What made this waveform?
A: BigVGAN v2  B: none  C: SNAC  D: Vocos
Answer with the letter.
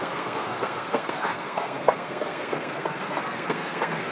C